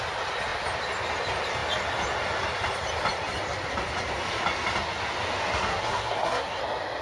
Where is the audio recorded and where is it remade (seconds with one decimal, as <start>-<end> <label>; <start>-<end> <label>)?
0.0-5.7 recorded; 5.7-6.6 remade; 6.6-7.0 recorded